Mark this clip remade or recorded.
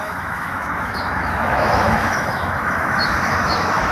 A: remade